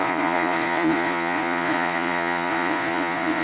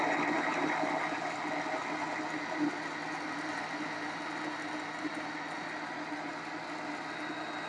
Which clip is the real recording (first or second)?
second